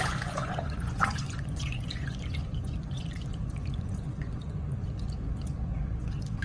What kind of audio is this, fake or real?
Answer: fake